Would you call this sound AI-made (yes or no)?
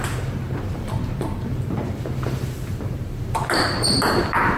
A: yes